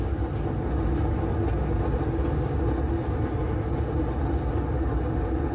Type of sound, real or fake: real